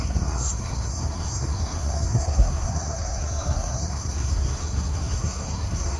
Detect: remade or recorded remade